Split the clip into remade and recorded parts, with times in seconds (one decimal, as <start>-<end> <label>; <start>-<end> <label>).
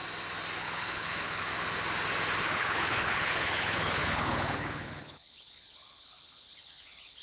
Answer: 0.0-0.6 recorded; 0.6-1.5 remade; 1.5-2.4 recorded; 2.4-7.2 remade